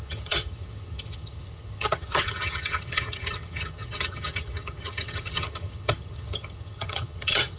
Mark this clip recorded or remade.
remade